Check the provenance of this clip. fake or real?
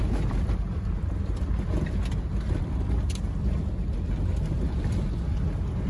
real